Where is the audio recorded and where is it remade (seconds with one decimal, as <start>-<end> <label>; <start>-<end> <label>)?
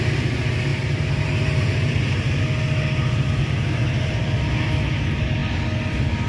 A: 0.0-0.7 recorded; 0.7-2.4 remade; 2.4-3.8 recorded; 3.8-4.3 remade; 4.3-6.3 recorded